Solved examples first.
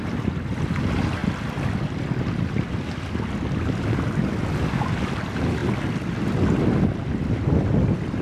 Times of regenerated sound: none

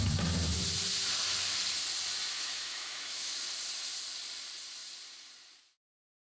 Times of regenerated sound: 2.3-3.3 (autoencoder, DAC-VAE)

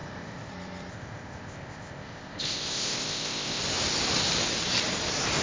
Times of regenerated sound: 0.0-0.5 (codec, ZipCodec); 0.9-3.6

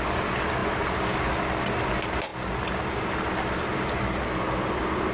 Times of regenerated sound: none

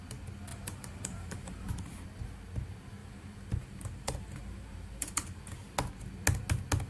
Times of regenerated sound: 0.5-1.7 (vocoder, BigVGAN v2); 3.0-5.4

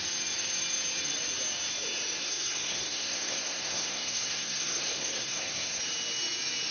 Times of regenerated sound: 2.2-5.8 (codec, SNAC)

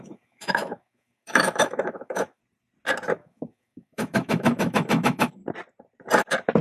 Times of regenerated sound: 0.0-2.4 (autoencoder, DAC-VAE); 3.1-5.4

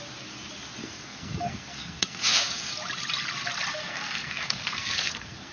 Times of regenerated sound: 0.8-2.7 (codec, SNAC); 3.7-5.5